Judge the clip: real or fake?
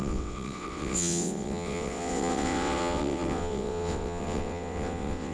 fake